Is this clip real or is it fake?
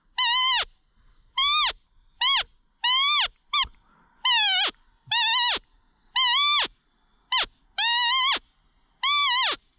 real